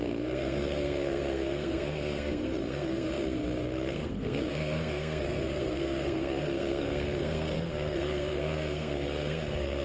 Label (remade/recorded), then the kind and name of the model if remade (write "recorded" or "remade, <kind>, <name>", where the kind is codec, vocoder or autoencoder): remade, codec, SNAC